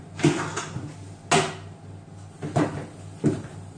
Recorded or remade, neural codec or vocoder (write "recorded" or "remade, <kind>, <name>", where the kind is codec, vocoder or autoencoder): recorded